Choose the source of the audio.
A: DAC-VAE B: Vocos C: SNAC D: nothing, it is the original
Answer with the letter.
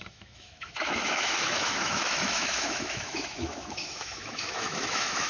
A